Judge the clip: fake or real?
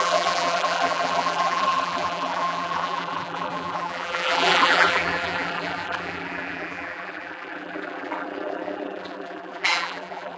fake